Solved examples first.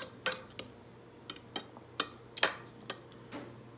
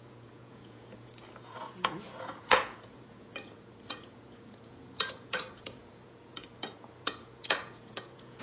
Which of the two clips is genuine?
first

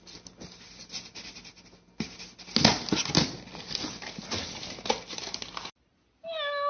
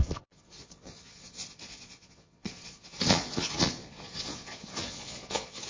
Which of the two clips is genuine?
first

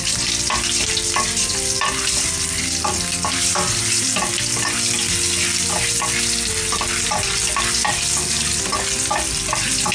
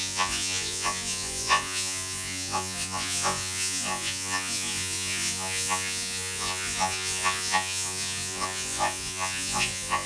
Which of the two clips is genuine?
first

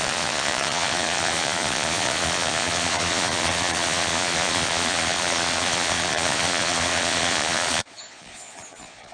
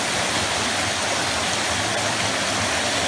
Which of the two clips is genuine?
second